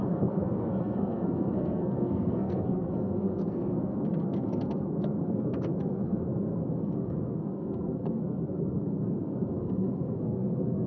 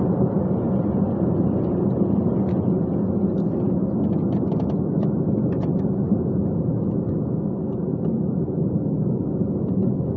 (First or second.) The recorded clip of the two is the second